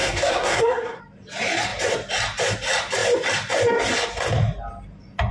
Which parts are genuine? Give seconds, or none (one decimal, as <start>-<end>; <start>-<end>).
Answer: 1.0-5.3

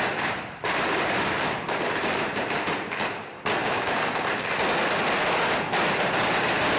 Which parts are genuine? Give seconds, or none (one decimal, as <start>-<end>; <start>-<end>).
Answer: 0.0-0.6; 2.6-3.6; 4.5-6.8

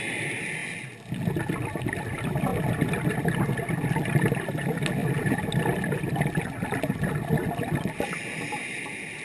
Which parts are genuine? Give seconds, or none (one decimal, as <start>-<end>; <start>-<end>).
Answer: 0.0-5.0; 6.1-9.2

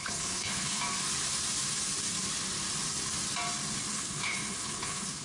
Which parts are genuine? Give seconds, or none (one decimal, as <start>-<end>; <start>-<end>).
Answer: 0.8-3.9

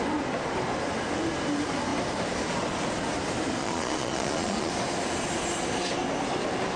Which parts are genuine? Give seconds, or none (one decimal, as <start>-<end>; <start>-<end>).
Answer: 0.0-3.6; 4.7-6.8

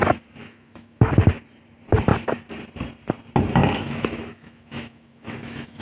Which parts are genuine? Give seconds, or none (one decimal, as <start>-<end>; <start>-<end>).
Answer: 0.0-0.4; 1.1-3.6